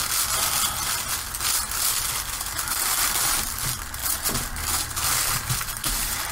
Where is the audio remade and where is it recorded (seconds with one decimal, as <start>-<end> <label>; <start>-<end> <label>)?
0.0-6.3 recorded